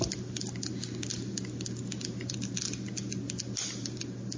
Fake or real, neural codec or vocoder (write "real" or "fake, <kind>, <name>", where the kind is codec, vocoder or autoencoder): real